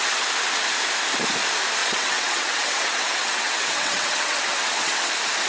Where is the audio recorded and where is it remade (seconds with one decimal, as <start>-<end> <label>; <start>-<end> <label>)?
0.0-1.8 recorded; 1.8-5.1 remade; 5.1-5.5 recorded